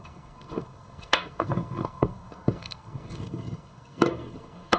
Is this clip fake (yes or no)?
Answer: yes